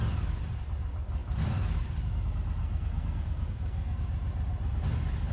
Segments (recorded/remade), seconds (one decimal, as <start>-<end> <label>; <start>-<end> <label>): 0.0-2.6 recorded; 2.6-4.0 remade; 4.0-5.3 recorded